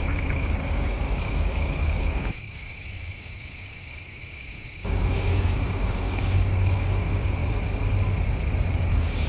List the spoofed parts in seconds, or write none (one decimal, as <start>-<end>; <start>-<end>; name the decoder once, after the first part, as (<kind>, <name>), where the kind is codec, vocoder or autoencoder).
0.0-7.4 (codec, DAC); 8.9-9.3